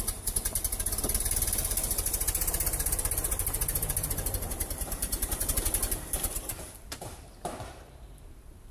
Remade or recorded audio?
remade